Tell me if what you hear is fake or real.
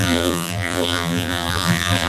fake